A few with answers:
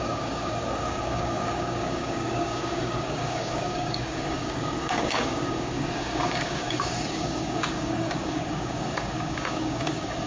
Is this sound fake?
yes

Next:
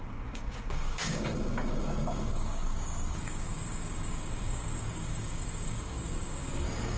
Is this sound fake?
yes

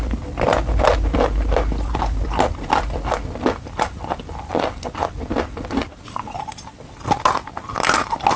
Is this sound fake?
no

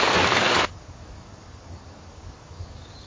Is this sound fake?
yes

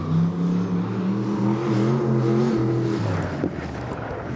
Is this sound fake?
no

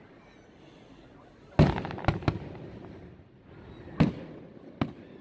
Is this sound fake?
no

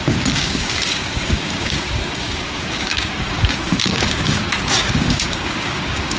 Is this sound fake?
yes